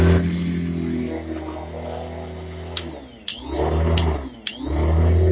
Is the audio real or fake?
real